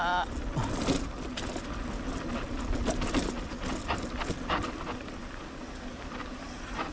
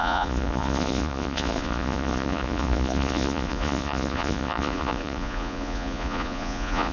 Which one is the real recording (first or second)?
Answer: first